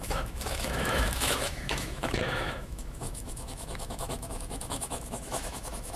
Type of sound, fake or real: fake